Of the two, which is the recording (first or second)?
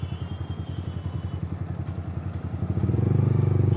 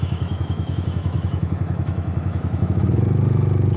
first